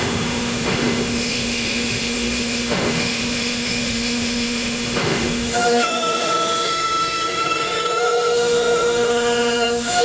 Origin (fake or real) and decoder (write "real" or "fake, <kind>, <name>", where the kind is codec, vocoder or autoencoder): fake, autoencoder, DAC-VAE